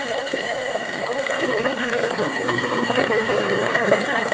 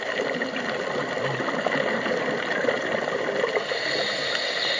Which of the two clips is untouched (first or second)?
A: second